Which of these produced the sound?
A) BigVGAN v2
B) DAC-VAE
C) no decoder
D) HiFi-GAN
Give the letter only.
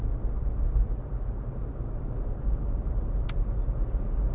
C